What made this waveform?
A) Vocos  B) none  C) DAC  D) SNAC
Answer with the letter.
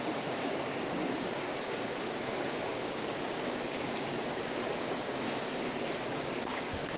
C